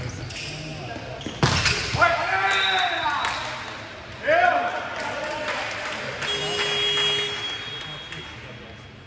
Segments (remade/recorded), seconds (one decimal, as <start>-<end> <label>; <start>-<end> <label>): 0.0-9.1 recorded